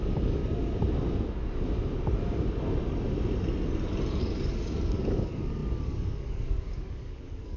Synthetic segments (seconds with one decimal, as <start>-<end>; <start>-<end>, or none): 0.0-0.4; 4.2-7.6